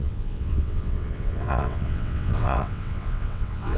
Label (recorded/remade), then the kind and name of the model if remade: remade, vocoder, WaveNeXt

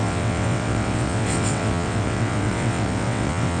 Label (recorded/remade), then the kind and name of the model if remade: remade, vocoder, WaveNeXt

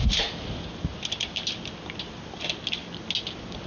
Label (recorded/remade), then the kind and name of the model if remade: recorded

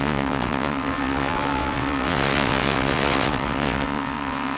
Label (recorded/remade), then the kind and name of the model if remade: remade, vocoder, WaveNeXt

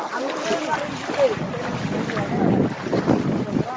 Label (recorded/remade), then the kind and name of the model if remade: recorded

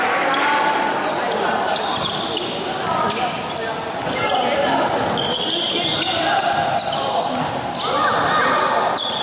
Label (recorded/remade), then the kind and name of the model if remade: recorded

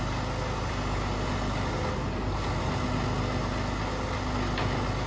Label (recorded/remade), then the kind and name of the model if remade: recorded